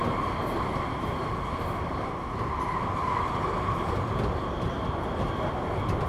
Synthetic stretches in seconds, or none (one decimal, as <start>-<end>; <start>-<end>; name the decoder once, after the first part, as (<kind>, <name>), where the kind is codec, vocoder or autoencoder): none